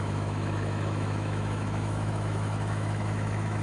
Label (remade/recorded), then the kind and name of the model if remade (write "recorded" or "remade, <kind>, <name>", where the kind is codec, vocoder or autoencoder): remade, autoencoder, DAC-VAE